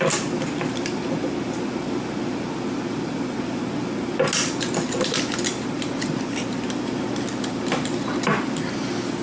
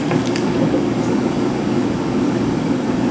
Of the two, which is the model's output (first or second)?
second